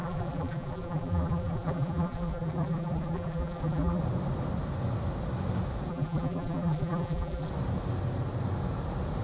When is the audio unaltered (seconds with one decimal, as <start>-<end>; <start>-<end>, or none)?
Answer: 4.0-5.9; 7.5-9.2